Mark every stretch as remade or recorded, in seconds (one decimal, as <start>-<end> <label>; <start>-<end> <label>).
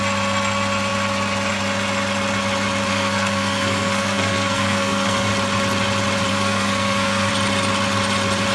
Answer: 0.0-2.9 recorded; 2.9-5.3 remade; 5.3-6.3 recorded; 6.3-7.3 remade; 7.3-8.5 recorded